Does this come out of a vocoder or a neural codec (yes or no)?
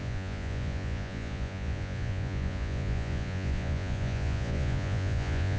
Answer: yes